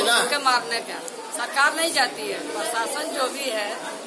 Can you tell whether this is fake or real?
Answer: real